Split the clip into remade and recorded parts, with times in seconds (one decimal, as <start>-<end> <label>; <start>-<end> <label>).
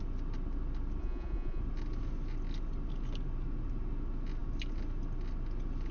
0.0-1.0 recorded; 1.0-1.6 remade; 1.6-5.9 recorded